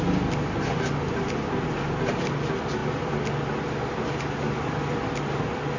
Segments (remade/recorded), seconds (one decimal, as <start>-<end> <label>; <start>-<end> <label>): 0.0-5.8 recorded